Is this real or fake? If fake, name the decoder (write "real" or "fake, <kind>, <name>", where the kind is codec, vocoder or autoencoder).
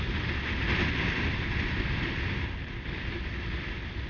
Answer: real